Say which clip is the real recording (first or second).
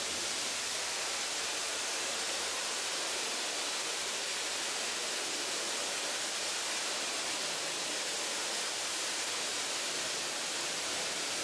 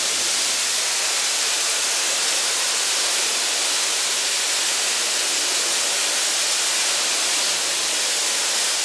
second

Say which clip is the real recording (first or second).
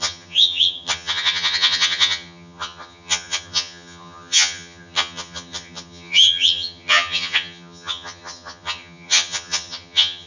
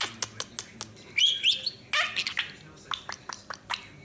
second